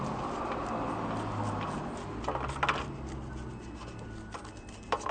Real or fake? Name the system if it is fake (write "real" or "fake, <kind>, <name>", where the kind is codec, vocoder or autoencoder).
real